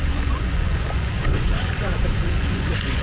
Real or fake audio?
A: fake